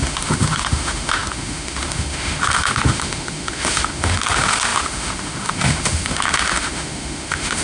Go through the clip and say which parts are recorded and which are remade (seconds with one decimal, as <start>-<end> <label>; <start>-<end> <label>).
0.0-7.6 remade